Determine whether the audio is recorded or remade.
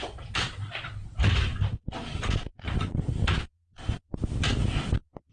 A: recorded